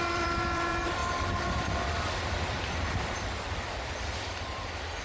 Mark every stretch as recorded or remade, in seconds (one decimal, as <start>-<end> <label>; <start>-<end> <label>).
0.0-5.0 remade